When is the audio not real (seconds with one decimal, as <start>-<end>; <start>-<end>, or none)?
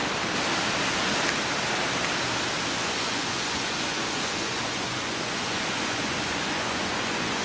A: 2.7-7.4